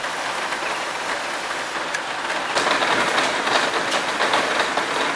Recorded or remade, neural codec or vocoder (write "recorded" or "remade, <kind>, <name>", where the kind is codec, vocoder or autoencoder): remade, vocoder, BigVGAN v2